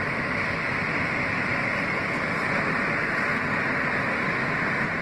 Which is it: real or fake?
real